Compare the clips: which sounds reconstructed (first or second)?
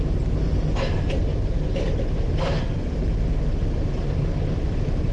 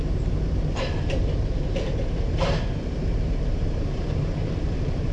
second